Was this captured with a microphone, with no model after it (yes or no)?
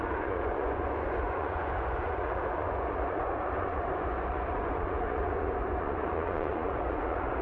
no